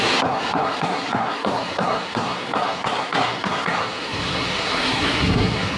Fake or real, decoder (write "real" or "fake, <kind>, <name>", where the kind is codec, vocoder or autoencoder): fake, codec, SNAC